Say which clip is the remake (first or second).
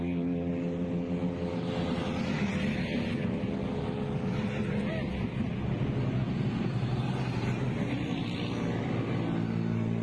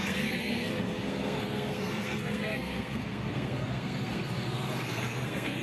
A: second